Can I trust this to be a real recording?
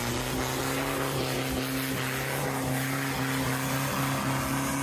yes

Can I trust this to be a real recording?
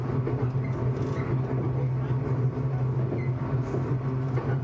yes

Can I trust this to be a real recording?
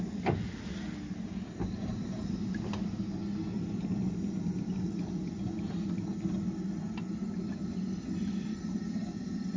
yes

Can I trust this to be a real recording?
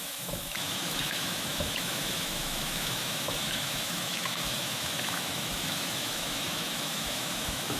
no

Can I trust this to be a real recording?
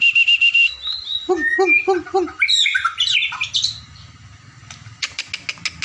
yes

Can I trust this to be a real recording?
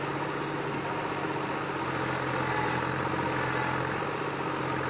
yes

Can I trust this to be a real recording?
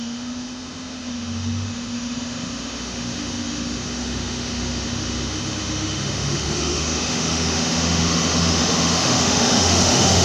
no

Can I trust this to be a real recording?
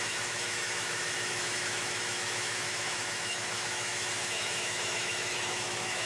no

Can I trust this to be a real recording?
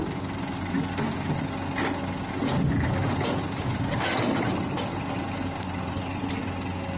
yes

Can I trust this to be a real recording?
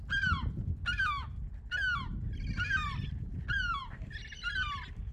yes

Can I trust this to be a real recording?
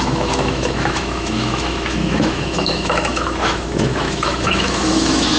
no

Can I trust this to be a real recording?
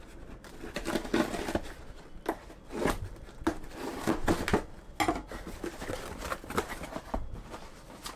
yes